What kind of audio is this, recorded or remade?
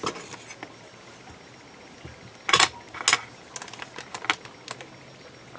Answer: recorded